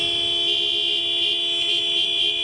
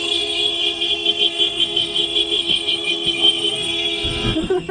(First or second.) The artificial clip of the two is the second